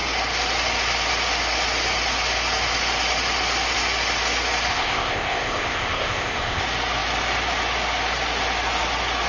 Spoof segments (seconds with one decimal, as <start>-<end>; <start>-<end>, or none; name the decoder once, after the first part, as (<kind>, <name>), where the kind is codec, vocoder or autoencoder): 4.7-6.6 (codec, ZipCodec)